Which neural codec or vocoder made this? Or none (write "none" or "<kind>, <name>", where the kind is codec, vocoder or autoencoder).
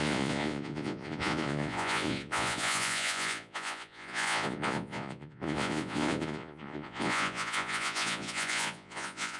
vocoder, Vocos